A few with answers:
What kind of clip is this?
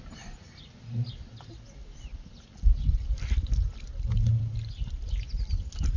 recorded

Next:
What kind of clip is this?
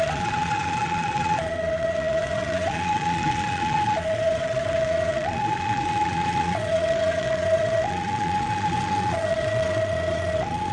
remade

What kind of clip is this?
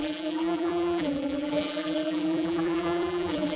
remade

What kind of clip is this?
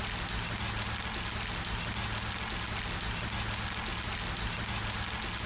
recorded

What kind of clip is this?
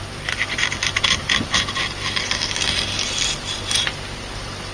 recorded